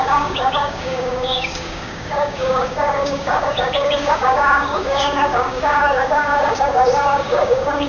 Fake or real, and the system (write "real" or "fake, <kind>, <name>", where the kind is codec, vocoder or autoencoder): fake, codec, DAC